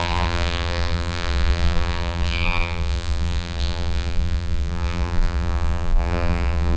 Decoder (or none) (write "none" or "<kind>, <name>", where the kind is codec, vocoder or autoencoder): vocoder, BigVGAN v2